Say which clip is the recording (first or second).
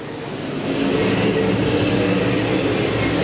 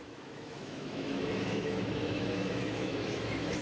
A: first